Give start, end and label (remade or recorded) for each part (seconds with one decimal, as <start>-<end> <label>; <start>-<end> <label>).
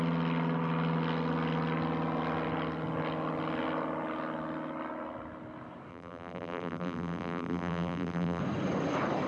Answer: 0.0-5.9 recorded; 5.9-8.4 remade; 8.4-9.3 recorded